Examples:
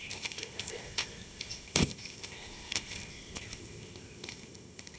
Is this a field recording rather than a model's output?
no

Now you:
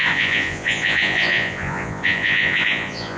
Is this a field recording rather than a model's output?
no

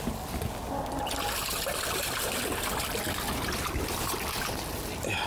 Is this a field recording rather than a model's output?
yes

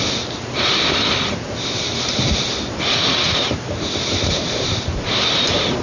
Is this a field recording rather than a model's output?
yes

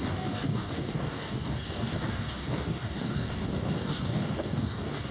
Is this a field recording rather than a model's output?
no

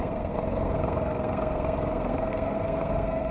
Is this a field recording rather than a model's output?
no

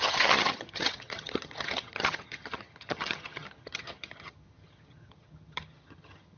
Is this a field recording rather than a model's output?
no